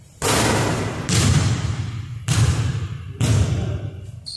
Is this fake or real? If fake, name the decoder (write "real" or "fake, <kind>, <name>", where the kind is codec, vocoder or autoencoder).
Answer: real